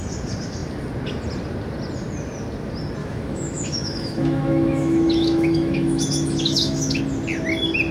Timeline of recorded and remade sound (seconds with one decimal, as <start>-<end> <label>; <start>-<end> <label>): 0.0-3.0 recorded; 3.0-7.0 remade; 7.0-7.9 recorded